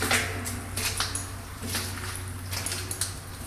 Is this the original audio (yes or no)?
yes